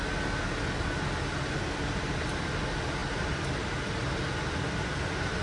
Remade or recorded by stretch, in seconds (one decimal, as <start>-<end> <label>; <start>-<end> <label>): 0.0-5.4 recorded